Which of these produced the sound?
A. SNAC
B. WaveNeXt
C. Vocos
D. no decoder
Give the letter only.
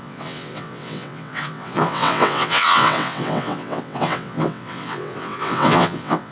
B